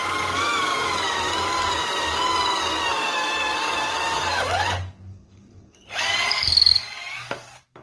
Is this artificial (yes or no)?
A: yes